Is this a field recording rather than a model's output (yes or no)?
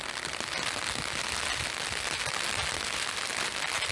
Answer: yes